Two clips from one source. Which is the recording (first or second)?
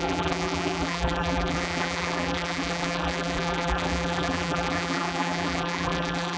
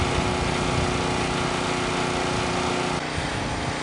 second